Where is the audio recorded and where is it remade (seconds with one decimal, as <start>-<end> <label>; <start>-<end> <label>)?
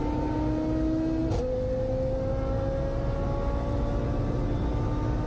0.0-5.3 recorded